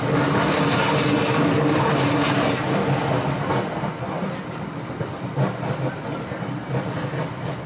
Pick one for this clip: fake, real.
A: real